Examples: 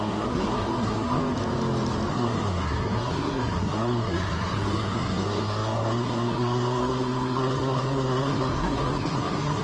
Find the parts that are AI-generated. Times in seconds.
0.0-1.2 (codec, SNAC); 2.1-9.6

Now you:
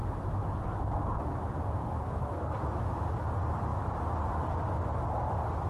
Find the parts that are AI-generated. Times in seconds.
1.8-2.6 (codec, SNAC)

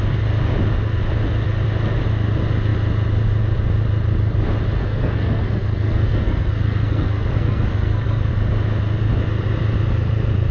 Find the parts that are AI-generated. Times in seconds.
4.8-8.3 (codec, SNAC)

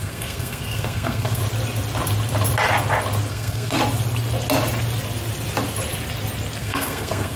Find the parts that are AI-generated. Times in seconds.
0.0-1.4 (codec, SNAC); 3.3-3.8; 6.6-7.4

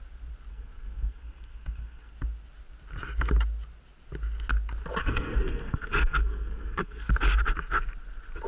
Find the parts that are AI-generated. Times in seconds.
0.5-2.1 (codec, SNAC); 5.0-7.1

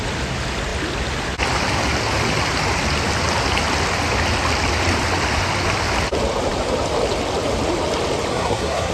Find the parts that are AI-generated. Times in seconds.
8.3-8.9 (codec, SNAC)

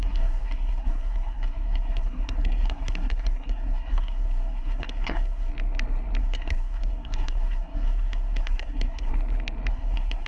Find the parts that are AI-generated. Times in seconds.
0.0-5.5 (codec, SNAC); 6.2-9.1; 9.7-10.3

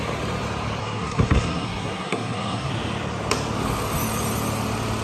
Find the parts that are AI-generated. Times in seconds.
0.8-2.7 (codec, SNAC)